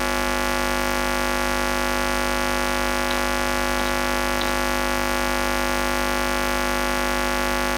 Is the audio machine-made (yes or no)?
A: no